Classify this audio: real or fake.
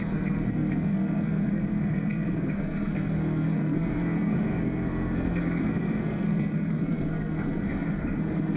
fake